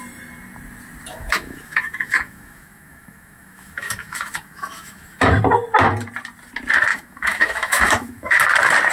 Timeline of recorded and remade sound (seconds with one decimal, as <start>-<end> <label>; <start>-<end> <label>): 0.0-1.1 recorded; 1.1-5.3 remade; 5.3-6.9 recorded; 6.9-8.4 remade; 8.4-8.9 recorded